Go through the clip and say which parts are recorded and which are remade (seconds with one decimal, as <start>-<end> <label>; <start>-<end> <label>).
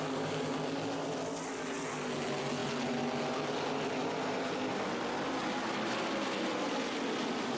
0.0-7.6 recorded